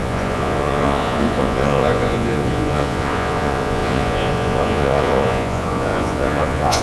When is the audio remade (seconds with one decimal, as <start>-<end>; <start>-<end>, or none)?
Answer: 0.0-6.8